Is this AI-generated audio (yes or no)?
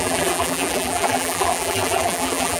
yes